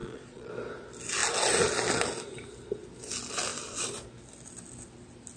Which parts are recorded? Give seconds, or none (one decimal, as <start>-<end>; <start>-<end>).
0.5-5.4